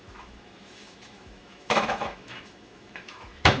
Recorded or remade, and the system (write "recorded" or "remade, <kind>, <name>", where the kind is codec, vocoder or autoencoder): remade, autoencoder, DAC-VAE